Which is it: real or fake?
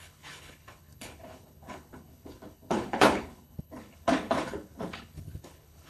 fake